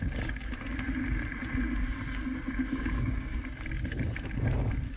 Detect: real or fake real